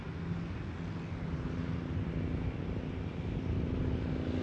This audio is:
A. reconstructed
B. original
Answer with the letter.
B